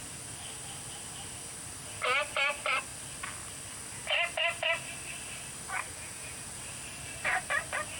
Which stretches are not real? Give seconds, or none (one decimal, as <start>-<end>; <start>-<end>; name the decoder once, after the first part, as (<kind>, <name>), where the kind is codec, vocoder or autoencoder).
5.9-6.6 (vocoder, Vocos)